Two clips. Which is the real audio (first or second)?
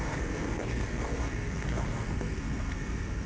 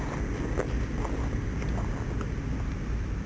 second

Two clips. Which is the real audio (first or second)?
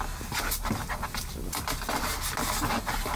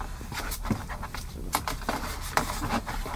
first